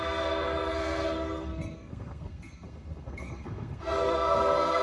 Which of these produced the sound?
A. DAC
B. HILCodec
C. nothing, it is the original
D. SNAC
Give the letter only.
D